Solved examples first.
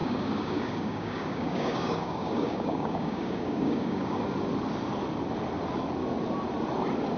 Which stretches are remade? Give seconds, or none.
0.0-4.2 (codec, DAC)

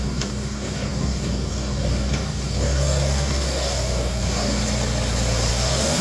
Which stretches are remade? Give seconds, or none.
0.0-4.6 (codec, DAC); 5.5-6.0